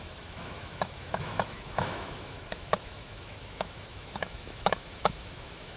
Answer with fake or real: fake